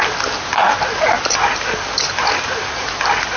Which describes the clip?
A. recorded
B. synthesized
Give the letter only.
A